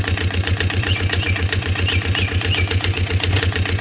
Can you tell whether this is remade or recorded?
remade